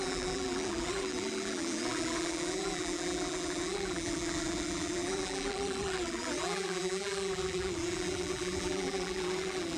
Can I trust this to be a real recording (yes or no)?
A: no